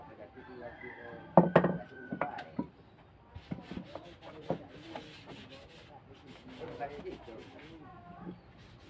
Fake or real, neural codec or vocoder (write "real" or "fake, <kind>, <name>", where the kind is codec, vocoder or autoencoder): real